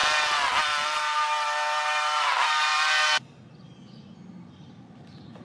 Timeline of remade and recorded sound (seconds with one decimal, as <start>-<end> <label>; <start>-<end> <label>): 0.0-2.2 recorded; 2.2-2.7 remade; 2.7-4.4 recorded; 4.4-5.4 remade